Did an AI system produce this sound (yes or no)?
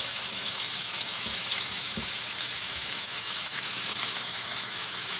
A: yes